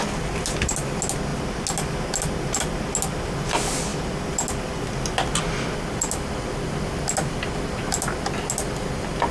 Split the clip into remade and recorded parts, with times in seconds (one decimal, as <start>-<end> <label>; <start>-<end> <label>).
0.0-9.3 recorded